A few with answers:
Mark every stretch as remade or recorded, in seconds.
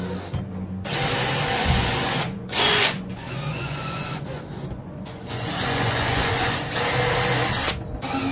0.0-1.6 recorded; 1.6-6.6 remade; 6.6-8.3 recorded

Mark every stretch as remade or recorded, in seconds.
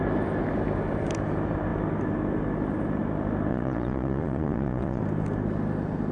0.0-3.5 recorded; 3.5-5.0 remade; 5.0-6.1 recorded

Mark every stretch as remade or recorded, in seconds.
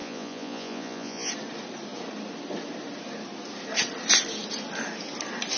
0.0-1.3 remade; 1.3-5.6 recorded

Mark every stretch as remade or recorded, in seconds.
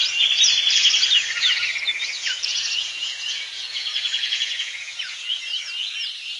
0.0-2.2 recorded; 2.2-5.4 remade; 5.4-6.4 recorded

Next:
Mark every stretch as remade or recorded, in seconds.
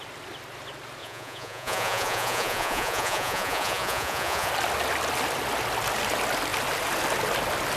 0.0-1.0 recorded; 1.0-4.5 remade; 4.5-7.8 recorded